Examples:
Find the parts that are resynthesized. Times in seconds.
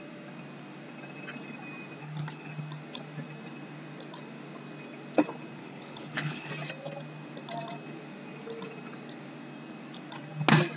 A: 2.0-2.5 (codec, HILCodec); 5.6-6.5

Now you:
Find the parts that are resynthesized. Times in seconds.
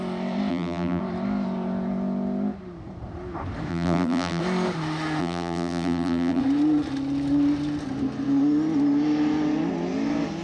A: 0.5-1.0 (vocoder, BigVGAN v2); 3.7-4.4; 5.2-6.4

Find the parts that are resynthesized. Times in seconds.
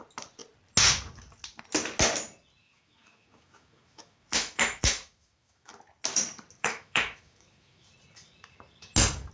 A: 2.6-5.7 (autoencoder, DAC-VAE); 6.6-7.9